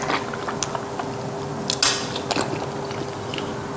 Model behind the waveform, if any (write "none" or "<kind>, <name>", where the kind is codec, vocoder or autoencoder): none